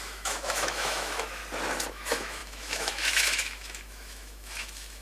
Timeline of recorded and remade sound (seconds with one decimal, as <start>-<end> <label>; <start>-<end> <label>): 0.0-1.4 remade; 1.4-1.9 recorded; 1.9-5.0 remade